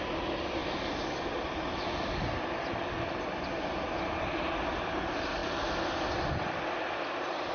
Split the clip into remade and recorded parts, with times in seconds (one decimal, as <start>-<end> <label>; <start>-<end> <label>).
0.0-7.5 recorded